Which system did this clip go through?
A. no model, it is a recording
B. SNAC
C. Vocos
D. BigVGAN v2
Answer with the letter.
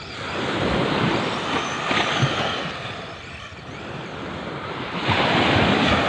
A